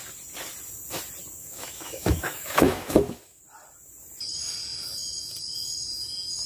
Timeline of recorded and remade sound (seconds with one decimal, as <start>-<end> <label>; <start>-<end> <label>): 0.0-1.4 recorded; 1.4-3.4 remade; 3.4-6.5 recorded